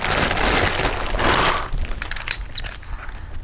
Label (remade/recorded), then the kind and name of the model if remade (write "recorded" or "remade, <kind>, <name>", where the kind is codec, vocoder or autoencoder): recorded